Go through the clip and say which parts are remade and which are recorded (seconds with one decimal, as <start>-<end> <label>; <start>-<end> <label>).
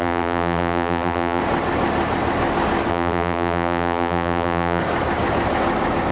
0.0-1.4 remade; 1.4-2.9 recorded; 2.9-4.8 remade; 4.8-6.1 recorded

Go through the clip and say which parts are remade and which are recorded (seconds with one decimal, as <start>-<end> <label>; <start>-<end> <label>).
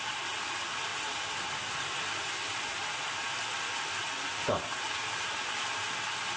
0.0-5.0 recorded; 5.0-5.9 remade; 5.9-6.4 recorded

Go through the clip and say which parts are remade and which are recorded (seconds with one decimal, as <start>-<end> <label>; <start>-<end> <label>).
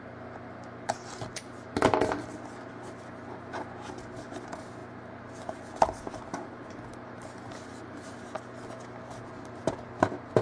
0.0-10.4 recorded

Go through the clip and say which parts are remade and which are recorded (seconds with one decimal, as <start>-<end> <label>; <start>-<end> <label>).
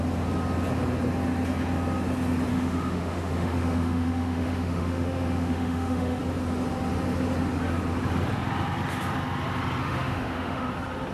0.0-2.5 recorded; 2.5-6.2 remade; 6.2-9.8 recorded; 9.8-10.7 remade; 10.7-11.1 recorded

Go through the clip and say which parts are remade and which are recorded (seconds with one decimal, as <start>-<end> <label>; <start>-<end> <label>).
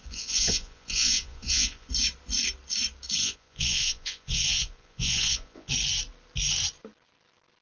0.0-1.9 remade; 1.9-3.2 recorded; 3.2-5.7 remade; 5.7-7.6 recorded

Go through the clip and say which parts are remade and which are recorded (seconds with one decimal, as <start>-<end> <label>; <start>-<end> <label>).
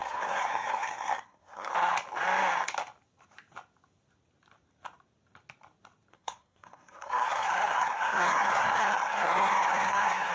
0.0-1.7 remade; 1.7-6.1 recorded; 6.1-10.3 remade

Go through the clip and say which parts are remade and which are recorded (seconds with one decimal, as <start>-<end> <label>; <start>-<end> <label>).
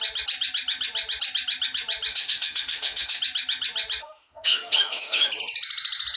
0.0-2.1 recorded; 2.1-3.2 remade; 3.2-4.0 recorded; 4.0-5.3 remade; 5.3-6.2 recorded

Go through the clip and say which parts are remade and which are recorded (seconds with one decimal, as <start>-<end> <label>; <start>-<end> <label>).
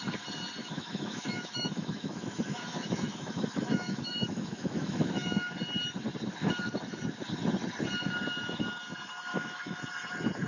0.0-0.6 recorded; 0.6-5.5 remade; 5.5-9.3 recorded; 9.3-9.8 remade; 9.8-10.5 recorded